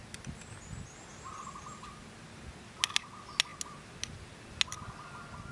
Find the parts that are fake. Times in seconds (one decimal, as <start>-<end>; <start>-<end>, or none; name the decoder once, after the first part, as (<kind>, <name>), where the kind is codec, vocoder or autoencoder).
none